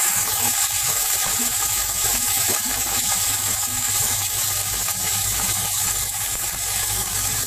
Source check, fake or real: fake